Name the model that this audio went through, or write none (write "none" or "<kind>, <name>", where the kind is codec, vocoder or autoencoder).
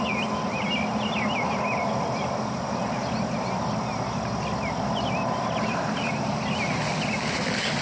none